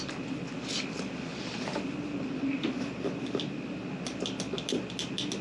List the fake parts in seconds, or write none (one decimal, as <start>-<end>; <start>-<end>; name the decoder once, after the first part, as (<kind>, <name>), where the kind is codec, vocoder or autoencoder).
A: none